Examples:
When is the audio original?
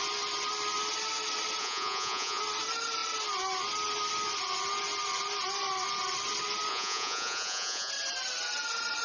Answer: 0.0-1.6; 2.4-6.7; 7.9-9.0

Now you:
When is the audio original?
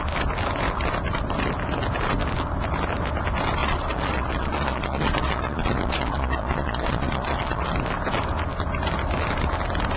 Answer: 0.0-3.6; 7.7-10.0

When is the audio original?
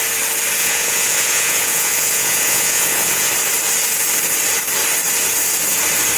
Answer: 0.0-0.6; 3.3-6.2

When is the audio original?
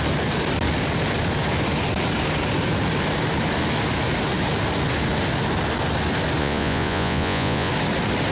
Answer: 0.0-6.4; 7.7-8.3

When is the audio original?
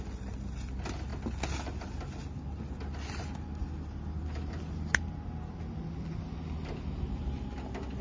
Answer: 0.0-8.0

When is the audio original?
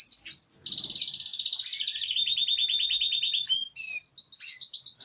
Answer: 0.0-5.0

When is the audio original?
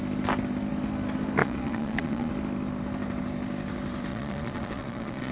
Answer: 0.0-1.4; 2.3-4.1